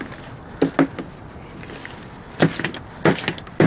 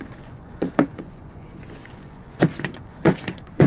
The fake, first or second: second